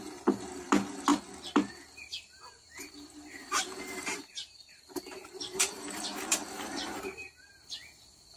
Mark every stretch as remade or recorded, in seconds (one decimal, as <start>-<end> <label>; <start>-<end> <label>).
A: 0.0-2.1 recorded; 2.1-6.9 remade; 6.9-8.4 recorded